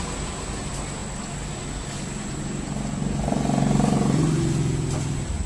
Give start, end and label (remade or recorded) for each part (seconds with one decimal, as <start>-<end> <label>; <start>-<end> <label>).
0.0-5.5 recorded